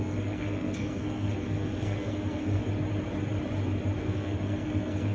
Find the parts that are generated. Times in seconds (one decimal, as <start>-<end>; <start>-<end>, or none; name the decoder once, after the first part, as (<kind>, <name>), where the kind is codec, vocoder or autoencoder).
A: 0.0-2.6 (codec, SNAC); 4.0-5.1